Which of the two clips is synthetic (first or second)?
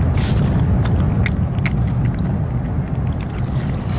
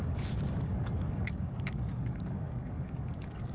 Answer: second